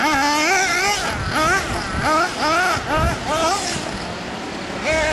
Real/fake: real